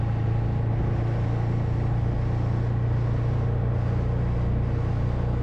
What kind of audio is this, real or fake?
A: real